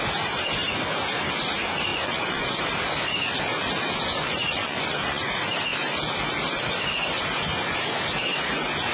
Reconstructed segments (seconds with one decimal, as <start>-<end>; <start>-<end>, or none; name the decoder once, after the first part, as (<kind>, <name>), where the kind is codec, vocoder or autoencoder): 1.9-2.6 (vocoder, Vocos); 4.1-5.3

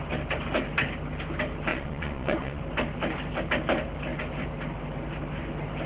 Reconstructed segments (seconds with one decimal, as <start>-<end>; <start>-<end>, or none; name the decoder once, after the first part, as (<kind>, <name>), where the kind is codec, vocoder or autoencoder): 1.7-2.6 (vocoder, Vocos)